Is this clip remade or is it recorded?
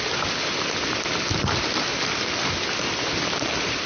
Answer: recorded